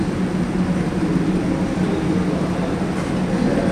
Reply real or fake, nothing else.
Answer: real